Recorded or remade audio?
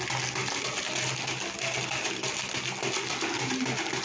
recorded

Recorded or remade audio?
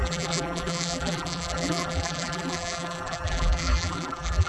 remade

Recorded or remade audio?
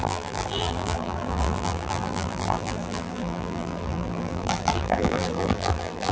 remade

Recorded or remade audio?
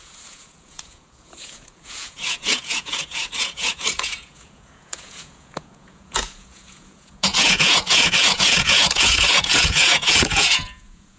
remade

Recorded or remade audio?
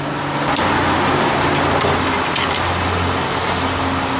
recorded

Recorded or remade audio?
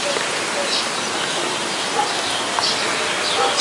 recorded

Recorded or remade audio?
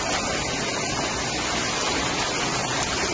recorded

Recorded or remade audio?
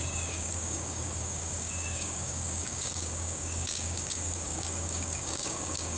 remade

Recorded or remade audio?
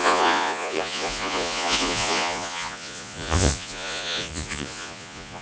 remade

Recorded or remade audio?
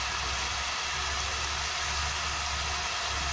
recorded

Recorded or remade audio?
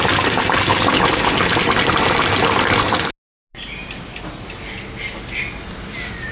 recorded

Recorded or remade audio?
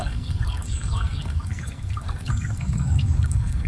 remade